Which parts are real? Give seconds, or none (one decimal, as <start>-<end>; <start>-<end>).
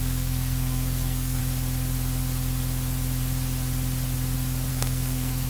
1.4-4.7